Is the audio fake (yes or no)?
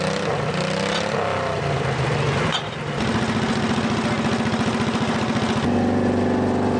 no